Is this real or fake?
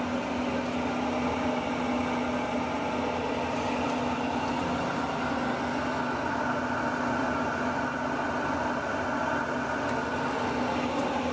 real